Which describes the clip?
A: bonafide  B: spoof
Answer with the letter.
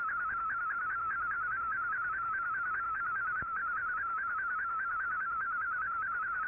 B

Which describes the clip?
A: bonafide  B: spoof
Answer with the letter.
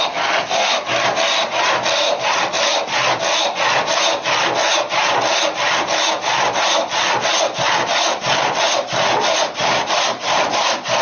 A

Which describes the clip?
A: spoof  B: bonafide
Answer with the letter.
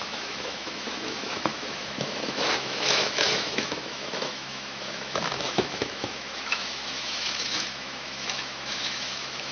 A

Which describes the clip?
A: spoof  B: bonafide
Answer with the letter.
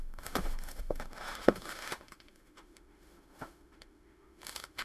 A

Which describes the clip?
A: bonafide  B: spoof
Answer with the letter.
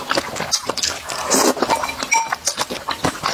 A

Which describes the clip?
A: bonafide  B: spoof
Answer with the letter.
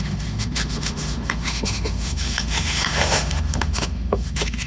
B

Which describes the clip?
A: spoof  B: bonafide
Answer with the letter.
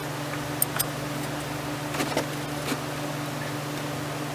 B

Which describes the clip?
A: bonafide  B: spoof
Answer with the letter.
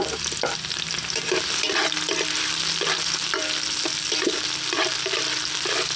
A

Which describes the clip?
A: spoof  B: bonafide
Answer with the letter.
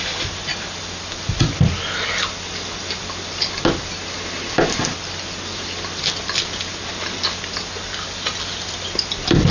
B